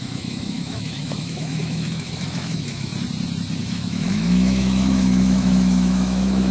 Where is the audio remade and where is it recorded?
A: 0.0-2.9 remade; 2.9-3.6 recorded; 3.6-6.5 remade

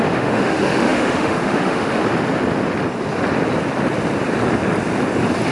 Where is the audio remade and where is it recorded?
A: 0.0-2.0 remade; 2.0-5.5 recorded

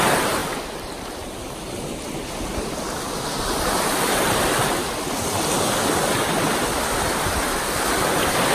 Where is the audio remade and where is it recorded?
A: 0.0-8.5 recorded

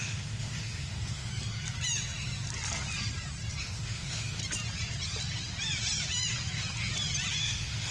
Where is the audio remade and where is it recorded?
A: 0.0-1.3 remade; 1.3-3.6 recorded; 3.6-4.4 remade; 4.4-7.4 recorded; 7.4-7.9 remade

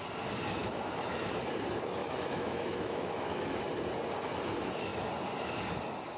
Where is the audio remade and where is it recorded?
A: 0.0-0.6 recorded; 0.6-1.3 remade; 1.3-2.0 recorded; 2.0-3.6 remade; 3.6-6.2 recorded